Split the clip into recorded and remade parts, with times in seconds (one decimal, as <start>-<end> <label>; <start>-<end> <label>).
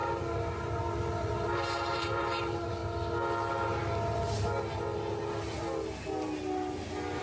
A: 0.0-2.8 remade; 2.8-7.2 recorded